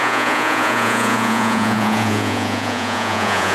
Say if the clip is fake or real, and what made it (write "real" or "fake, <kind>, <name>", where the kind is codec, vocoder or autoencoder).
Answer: fake, vocoder, Vocos